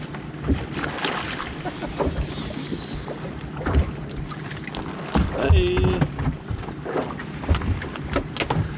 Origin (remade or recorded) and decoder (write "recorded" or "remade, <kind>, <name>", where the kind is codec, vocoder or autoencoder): recorded